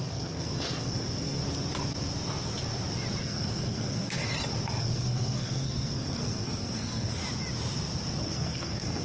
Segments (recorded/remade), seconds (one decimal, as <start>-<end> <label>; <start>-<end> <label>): 0.0-1.4 remade; 1.4-3.2 recorded; 3.2-4.2 remade; 4.2-4.8 recorded; 4.8-7.2 remade; 7.2-8.2 recorded; 8.2-9.0 remade